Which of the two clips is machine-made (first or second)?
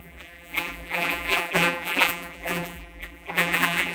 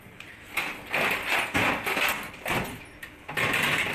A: first